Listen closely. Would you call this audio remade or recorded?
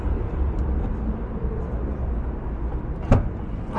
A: recorded